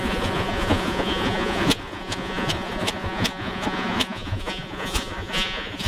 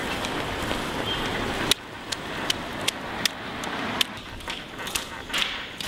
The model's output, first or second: first